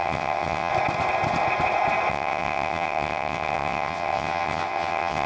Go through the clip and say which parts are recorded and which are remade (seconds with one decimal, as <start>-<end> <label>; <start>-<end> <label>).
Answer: 0.0-0.7 remade; 0.7-2.1 recorded; 2.1-5.3 remade